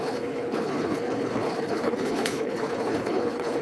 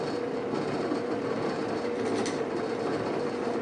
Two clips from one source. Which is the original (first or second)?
second